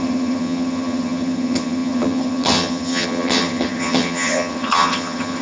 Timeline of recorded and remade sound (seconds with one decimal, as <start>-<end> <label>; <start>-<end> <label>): 0.0-5.4 remade